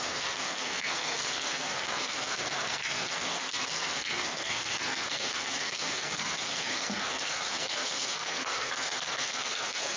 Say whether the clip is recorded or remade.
remade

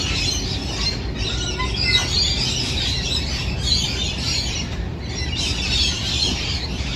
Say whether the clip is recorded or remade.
recorded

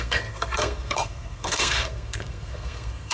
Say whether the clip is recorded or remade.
remade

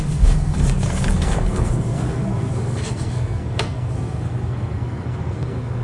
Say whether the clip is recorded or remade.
remade